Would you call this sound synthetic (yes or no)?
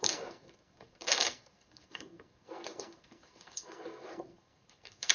yes